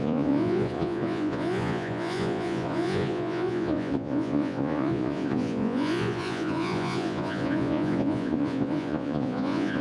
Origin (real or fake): fake